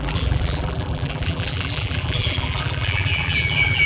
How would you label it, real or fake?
fake